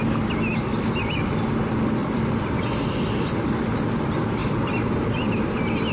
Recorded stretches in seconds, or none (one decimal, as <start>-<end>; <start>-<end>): 0.0-0.5; 1.2-2.0; 2.9-4.4; 5.5-5.9